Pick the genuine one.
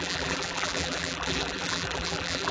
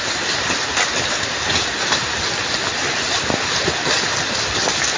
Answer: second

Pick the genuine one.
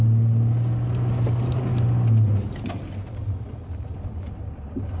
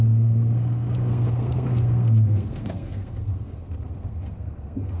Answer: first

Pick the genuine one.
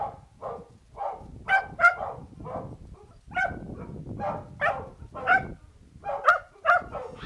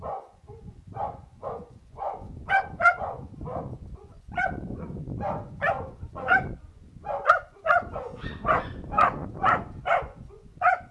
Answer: first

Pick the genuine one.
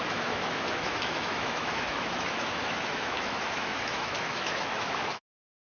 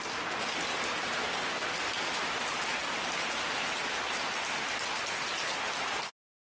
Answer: second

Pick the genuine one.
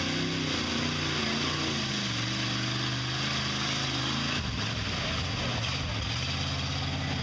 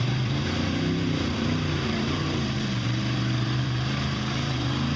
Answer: first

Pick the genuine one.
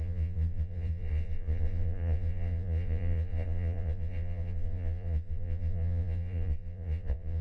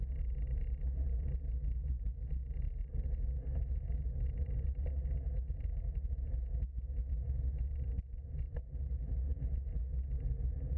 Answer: second